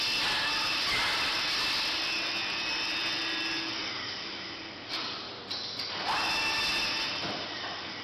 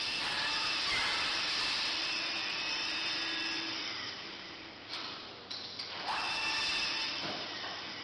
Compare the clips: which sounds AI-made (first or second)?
second